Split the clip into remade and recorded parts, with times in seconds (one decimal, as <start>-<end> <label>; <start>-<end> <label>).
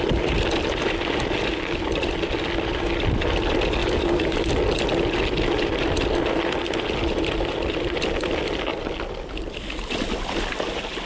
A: 0.0-3.8 recorded; 3.8-4.5 remade; 4.5-11.1 recorded